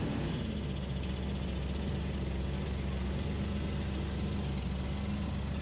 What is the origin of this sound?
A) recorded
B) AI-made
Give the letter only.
A